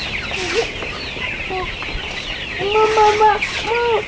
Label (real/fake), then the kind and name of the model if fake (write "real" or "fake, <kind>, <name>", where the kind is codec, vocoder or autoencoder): real